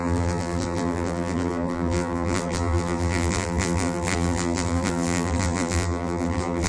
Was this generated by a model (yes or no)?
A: yes